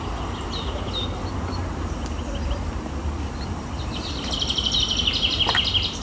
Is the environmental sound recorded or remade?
recorded